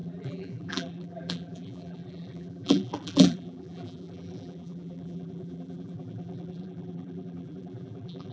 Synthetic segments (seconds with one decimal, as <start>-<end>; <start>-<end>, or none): 0.0-8.3